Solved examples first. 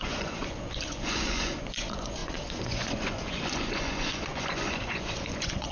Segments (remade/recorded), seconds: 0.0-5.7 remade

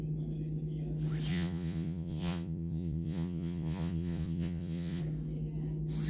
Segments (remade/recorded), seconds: 0.0-1.3 recorded; 1.3-5.0 remade; 5.0-6.1 recorded

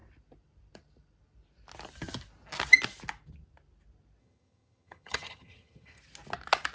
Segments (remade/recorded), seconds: 0.0-4.2 recorded; 4.2-6.0 remade; 6.0-6.7 recorded

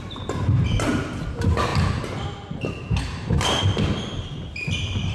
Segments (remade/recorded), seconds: 0.0-5.1 recorded

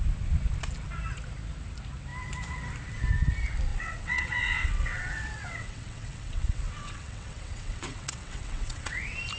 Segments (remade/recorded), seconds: 0.0-3.7 recorded; 3.7-9.0 remade; 9.0-9.4 recorded

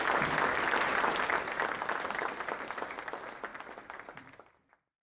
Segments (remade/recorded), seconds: 0.0-5.0 recorded

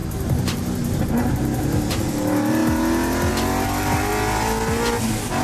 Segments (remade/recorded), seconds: 0.0-5.4 recorded